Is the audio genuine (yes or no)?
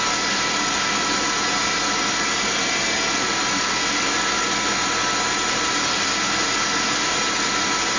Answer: yes